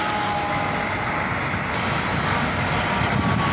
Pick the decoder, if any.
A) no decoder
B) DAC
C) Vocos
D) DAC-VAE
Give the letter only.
A